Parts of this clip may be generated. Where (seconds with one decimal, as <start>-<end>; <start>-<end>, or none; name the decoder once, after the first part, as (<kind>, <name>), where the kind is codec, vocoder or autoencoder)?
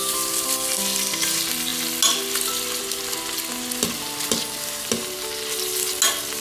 none